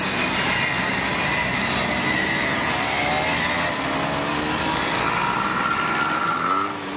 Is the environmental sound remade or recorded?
recorded